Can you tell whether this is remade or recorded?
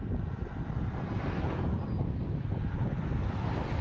recorded